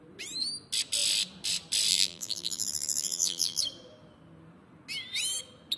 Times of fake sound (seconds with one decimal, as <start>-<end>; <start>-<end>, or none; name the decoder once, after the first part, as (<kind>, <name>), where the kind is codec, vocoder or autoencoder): 1.9-3.6 (vocoder, BigVGAN v2)